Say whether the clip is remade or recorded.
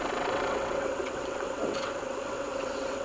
remade